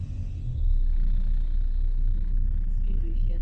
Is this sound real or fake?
real